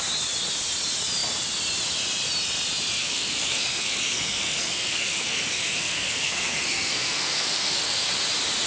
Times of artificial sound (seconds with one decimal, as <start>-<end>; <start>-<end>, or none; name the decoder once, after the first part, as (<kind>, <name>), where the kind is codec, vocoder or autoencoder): 3.0-8.1 (codec, SNAC)